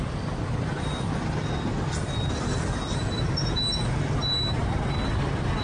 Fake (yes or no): no